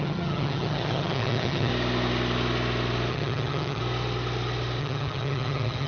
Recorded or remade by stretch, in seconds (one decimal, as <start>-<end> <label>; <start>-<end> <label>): 0.0-1.7 remade; 1.7-3.1 recorded; 3.1-3.8 remade; 3.8-4.8 recorded; 4.8-5.9 remade